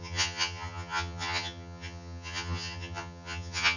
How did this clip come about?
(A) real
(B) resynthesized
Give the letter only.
B